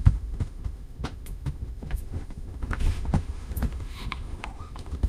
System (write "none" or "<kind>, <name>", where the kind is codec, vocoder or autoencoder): autoencoder, DAC-VAE